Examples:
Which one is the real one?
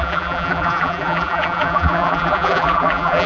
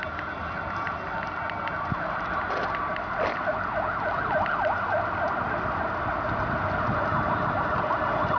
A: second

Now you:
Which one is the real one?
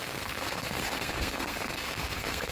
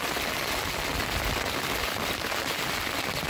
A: second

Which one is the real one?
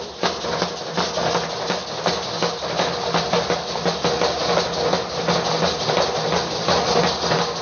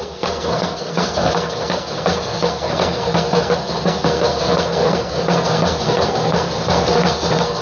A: first